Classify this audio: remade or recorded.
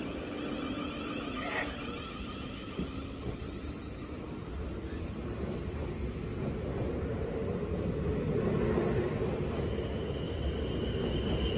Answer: recorded